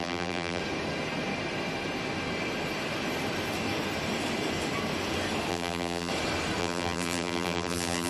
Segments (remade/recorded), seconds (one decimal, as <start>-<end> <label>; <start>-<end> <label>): 0.0-0.6 remade; 0.6-5.5 recorded; 5.5-6.1 remade; 6.1-6.6 recorded; 6.6-8.1 remade